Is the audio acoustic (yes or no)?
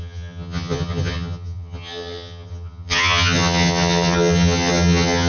no